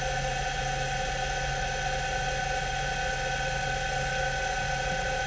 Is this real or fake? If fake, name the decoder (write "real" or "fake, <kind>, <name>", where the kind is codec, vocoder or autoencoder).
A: real